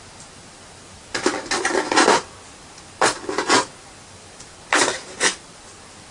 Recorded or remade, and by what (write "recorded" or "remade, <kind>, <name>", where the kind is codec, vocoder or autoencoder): recorded